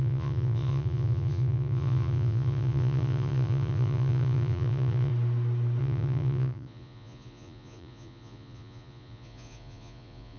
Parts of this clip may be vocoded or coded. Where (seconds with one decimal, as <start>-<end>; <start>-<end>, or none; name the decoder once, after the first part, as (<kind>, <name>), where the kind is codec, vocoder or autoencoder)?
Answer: 0.0-5.1 (vocoder, Vocos); 5.8-10.4

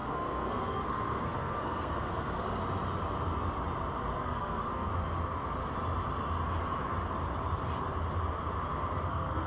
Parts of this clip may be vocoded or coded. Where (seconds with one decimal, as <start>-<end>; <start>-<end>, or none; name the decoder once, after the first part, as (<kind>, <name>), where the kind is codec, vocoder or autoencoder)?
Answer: 0.0-2.6 (codec, SNAC); 4.2-4.9; 9.1-9.5

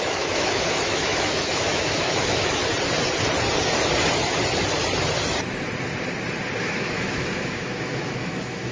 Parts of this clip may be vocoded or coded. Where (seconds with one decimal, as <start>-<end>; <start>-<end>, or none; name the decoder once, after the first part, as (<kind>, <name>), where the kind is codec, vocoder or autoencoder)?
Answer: 0.0-2.6 (autoencoder, DAC-VAE); 6.6-8.7

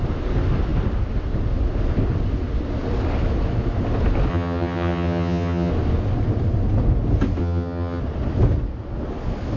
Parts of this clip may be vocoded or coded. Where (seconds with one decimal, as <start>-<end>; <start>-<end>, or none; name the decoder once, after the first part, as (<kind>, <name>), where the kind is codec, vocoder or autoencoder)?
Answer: 4.3-5.7 (vocoder, HiFi-GAN); 7.4-8.0

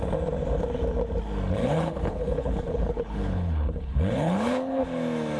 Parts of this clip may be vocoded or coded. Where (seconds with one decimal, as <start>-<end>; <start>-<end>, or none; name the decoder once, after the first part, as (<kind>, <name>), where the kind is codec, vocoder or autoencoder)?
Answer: 1.6-4.8 (codec, HILCodec)

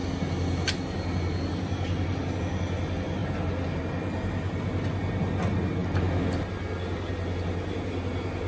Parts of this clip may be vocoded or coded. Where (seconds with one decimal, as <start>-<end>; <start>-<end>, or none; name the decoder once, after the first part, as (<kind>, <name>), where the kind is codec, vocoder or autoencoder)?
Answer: none

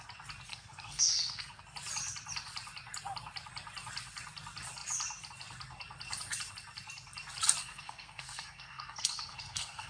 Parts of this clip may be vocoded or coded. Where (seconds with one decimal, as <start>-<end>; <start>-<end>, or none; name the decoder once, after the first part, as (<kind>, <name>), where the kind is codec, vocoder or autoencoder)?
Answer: 0.5-1.6 (codec, SNAC); 7.6-9.9

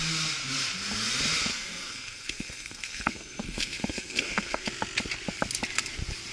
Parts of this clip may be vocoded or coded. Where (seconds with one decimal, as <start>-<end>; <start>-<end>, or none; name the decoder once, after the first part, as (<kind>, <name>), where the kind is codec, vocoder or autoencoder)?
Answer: 1.5-4.7 (codec, SNAC)